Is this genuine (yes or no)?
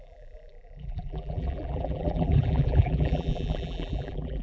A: no